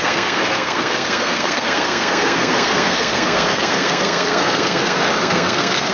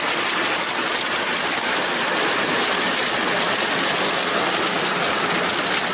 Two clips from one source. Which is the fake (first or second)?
first